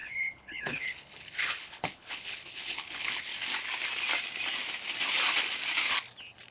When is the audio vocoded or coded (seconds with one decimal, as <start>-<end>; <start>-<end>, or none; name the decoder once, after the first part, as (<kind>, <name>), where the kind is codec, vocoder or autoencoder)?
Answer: 0.0-3.3 (codec, HILCodec)